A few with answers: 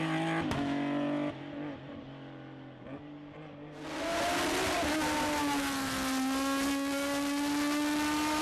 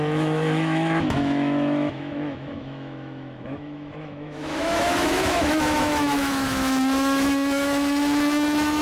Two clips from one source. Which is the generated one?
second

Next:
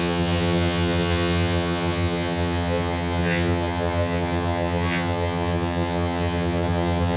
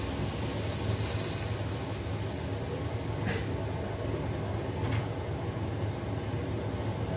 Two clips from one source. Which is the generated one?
first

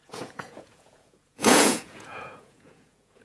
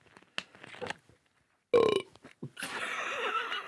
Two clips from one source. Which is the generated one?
first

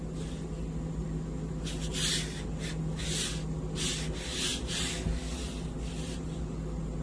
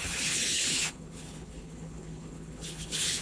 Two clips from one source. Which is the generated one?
second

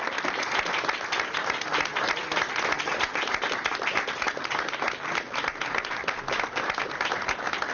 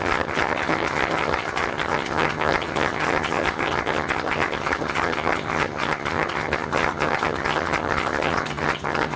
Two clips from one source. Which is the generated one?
second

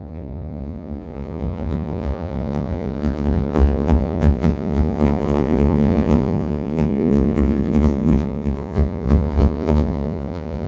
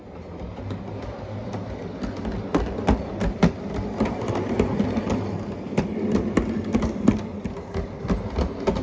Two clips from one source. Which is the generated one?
first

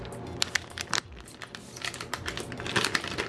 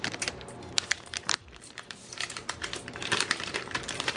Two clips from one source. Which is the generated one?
second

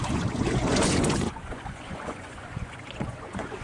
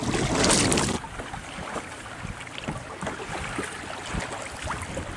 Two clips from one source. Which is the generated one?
first